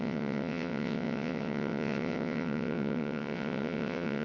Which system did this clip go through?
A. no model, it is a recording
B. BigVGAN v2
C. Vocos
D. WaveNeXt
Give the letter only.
D